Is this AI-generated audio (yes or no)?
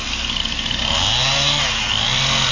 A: no